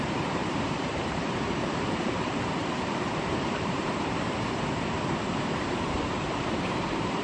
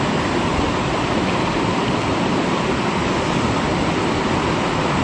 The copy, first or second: first